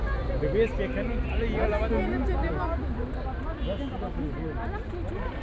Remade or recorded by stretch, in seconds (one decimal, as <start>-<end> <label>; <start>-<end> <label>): 0.0-5.4 recorded